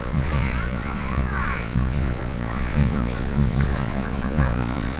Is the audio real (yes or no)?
no